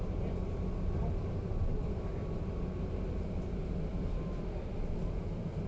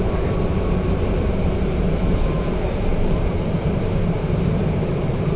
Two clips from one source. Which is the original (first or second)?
first